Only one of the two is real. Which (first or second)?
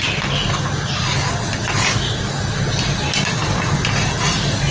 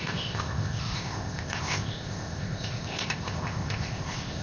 first